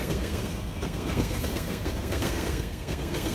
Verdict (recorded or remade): remade